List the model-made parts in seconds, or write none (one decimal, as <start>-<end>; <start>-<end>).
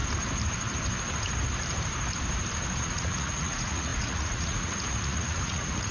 2.8-5.9